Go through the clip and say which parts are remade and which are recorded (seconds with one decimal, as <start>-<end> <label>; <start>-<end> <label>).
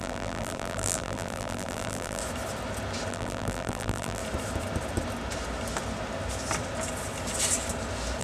0.0-2.2 remade; 2.2-3.1 recorded; 3.1-4.2 remade; 4.2-8.2 recorded